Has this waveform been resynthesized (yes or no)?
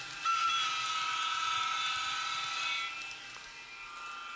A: no